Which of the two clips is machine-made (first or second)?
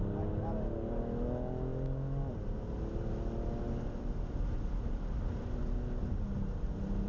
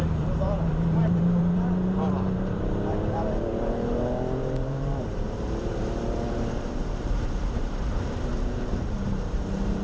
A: second